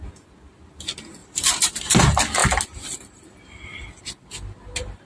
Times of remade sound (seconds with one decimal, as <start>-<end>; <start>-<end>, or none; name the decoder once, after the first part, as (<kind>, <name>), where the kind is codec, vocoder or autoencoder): 1.2-1.9 (vocoder, BigVGAN v2)